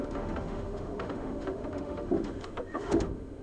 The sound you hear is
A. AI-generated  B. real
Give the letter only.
A